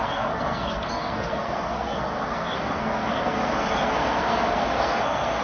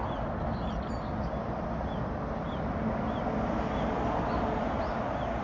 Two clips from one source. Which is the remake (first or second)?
first